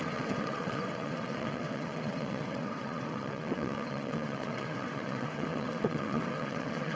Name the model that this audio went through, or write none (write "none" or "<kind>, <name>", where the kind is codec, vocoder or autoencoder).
vocoder, WaveNeXt